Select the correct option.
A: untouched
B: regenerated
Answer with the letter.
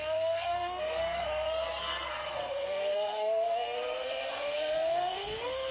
B